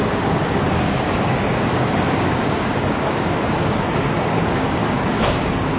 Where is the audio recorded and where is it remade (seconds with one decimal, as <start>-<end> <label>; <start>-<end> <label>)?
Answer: 0.0-5.8 remade